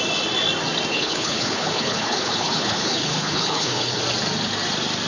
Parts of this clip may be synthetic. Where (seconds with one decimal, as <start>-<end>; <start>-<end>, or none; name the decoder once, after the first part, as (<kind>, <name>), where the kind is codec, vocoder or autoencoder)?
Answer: 0.9-4.0 (codec, HILCodec)